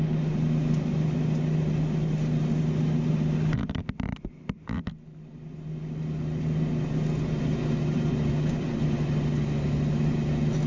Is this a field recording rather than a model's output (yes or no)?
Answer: yes